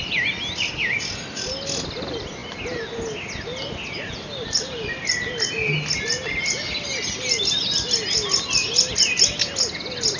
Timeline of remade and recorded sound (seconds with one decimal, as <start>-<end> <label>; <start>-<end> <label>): 0.0-10.2 recorded